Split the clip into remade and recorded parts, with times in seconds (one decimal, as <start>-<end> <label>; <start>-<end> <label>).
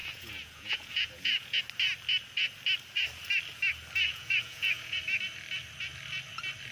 0.0-1.6 remade; 1.6-4.0 recorded; 4.0-5.0 remade; 5.0-6.7 recorded